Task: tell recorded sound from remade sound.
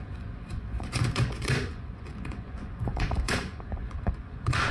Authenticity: remade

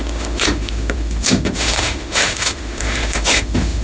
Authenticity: remade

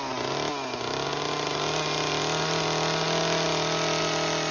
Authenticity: recorded